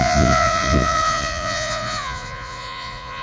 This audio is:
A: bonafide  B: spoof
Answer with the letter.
B